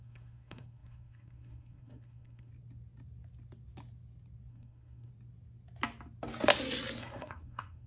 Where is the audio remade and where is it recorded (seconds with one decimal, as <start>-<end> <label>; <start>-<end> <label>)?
0.0-2.5 remade; 2.5-4.5 recorded; 4.5-5.1 remade; 5.1-7.0 recorded; 7.0-7.9 remade